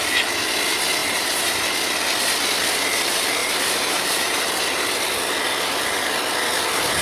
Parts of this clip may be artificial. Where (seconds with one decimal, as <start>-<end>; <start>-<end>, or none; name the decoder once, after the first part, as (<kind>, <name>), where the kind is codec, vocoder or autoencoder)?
1.0-1.6 (vocoder, BigVGAN v2); 3.4-4.5